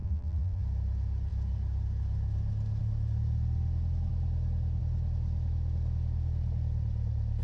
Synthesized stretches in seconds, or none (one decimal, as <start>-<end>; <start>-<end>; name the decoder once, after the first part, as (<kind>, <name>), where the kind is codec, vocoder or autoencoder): 0.0-0.6 (vocoder, BigVGAN v2)